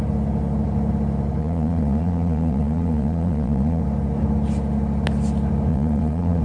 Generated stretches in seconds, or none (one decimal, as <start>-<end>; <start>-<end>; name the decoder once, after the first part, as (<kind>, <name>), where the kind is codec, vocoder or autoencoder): 1.4-3.8 (vocoder, Vocos); 5.7-6.4